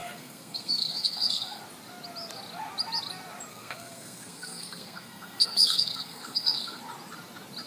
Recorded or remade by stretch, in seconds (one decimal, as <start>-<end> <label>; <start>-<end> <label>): 0.0-1.6 remade; 1.6-3.5 recorded; 3.5-6.8 remade; 6.8-7.7 recorded